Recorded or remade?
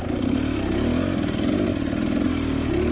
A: recorded